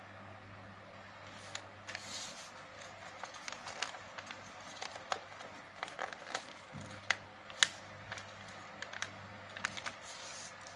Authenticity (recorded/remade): recorded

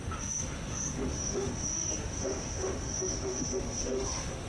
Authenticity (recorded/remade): remade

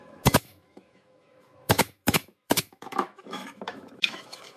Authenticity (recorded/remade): remade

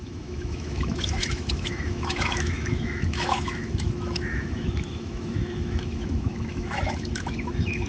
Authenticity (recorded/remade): remade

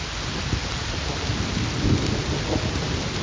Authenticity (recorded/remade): recorded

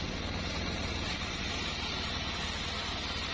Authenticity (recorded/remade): recorded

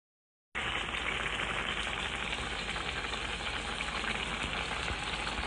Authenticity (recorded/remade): recorded